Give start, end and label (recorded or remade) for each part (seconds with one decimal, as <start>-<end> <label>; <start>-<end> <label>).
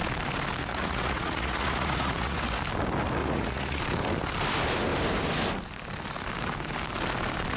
0.0-0.6 recorded; 0.6-2.6 remade; 2.6-3.2 recorded; 3.2-3.8 remade; 3.8-7.6 recorded